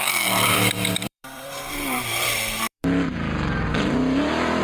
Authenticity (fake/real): fake